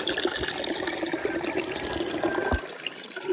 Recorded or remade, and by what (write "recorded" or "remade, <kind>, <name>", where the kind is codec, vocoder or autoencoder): recorded